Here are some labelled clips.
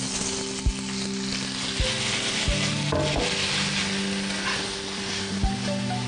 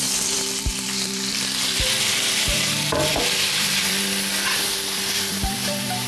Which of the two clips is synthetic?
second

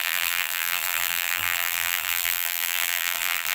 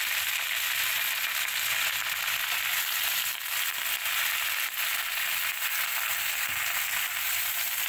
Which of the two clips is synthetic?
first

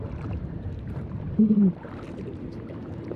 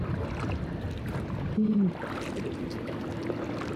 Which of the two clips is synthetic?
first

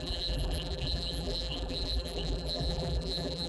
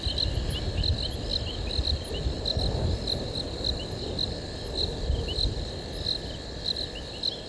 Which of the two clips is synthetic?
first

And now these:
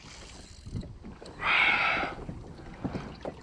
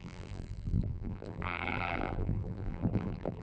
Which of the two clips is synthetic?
second